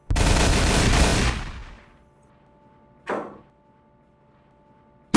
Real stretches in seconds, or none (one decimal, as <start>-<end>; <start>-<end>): 0.0-5.2